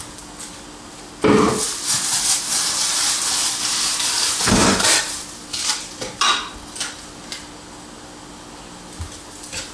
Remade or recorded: recorded